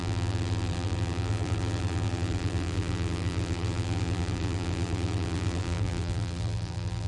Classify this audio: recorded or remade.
remade